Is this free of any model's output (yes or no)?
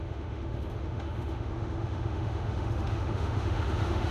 no